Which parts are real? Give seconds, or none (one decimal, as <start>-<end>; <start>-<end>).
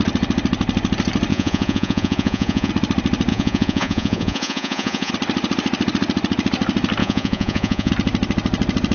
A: 0.0-1.3; 2.7-3.3; 5.1-7.0; 7.9-8.9